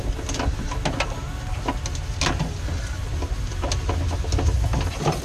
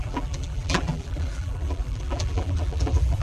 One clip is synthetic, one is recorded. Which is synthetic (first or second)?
second